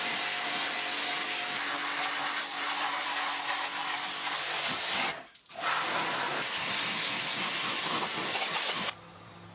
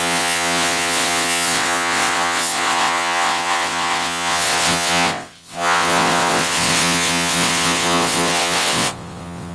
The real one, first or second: first